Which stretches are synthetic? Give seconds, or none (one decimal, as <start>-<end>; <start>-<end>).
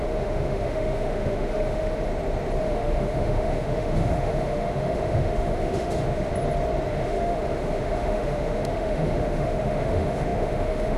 0.0-2.1; 2.6-6.3; 6.9-11.0